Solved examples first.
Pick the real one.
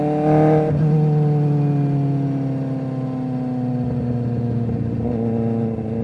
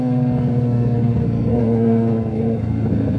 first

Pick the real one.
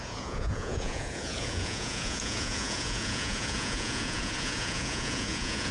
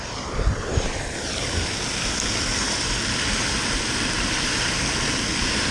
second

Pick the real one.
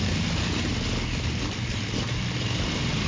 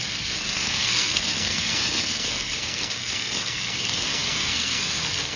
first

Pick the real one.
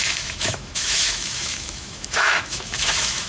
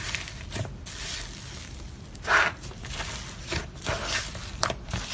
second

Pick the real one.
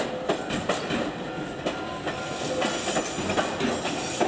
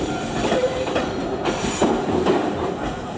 first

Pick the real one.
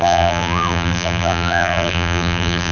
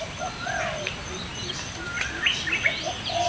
second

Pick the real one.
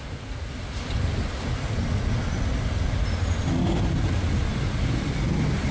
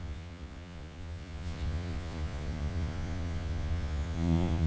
first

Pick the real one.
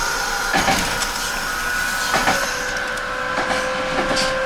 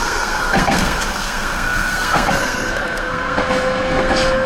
first